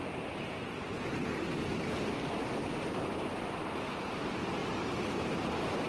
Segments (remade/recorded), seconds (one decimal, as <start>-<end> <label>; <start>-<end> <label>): 0.0-4.6 recorded; 4.6-5.1 remade; 5.1-5.9 recorded

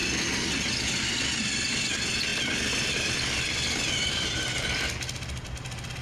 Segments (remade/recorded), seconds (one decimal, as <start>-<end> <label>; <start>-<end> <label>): 0.0-6.0 recorded

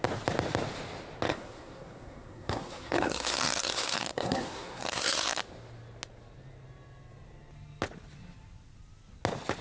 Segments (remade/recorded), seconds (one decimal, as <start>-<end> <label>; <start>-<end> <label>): 0.0-1.3 recorded; 1.3-5.4 remade; 5.4-9.6 recorded